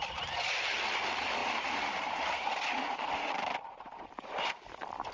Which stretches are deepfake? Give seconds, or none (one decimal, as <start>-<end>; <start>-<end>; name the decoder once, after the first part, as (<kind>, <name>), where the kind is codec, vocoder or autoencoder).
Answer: 1.4-4.5 (vocoder, BigVGAN v2)